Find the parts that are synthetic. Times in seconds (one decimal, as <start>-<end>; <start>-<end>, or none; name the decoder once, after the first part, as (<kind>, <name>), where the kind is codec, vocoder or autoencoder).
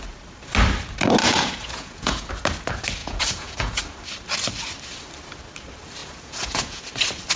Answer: 1.2-2.3 (vocoder, Vocos); 3.0-3.8; 6.0-6.8